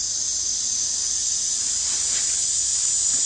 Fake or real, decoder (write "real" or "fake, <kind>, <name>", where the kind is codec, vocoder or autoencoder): real